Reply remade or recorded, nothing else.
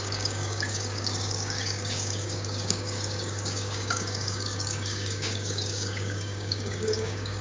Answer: remade